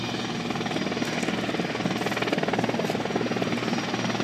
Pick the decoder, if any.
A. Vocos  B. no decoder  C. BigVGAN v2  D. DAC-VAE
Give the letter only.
B